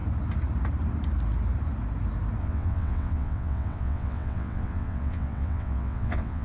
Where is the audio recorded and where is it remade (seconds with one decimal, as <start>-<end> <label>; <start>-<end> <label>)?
0.0-2.4 recorded; 2.4-6.4 remade